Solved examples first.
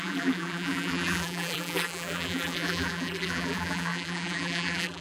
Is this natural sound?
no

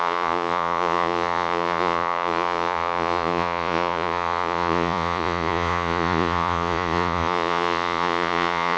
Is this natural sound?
no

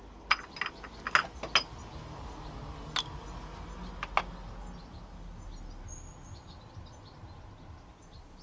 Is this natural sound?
yes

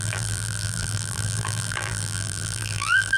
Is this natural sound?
no